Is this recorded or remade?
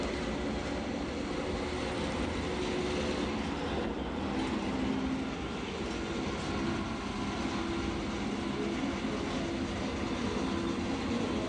recorded